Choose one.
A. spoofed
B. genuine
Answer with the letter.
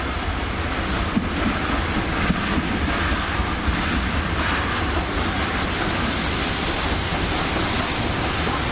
B